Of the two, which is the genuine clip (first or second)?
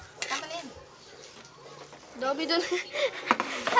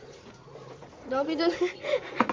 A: first